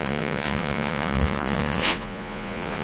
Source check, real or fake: fake